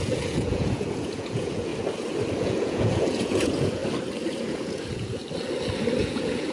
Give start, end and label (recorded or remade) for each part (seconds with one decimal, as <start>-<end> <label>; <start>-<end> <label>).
0.0-1.7 remade; 1.7-2.4 recorded; 2.4-3.8 remade; 3.8-4.4 recorded; 4.4-5.2 remade; 5.2-6.0 recorded; 6.0-6.5 remade